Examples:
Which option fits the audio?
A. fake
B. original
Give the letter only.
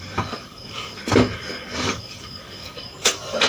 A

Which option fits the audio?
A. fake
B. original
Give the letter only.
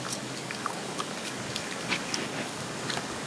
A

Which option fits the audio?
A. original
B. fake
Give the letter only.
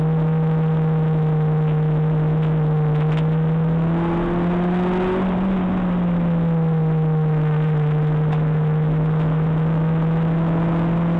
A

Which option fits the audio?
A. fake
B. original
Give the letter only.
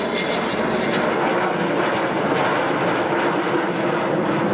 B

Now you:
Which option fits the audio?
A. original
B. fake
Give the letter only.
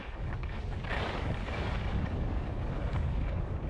B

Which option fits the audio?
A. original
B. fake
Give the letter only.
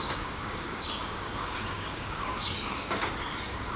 B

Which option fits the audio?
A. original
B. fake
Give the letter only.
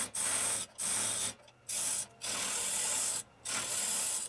A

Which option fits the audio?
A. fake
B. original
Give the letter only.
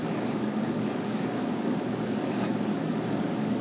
A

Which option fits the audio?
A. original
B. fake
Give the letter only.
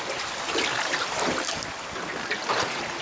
A